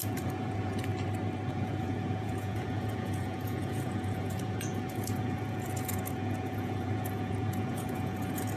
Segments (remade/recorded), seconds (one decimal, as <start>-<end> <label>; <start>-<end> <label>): 0.0-0.9 remade; 0.9-1.5 recorded; 1.5-8.6 remade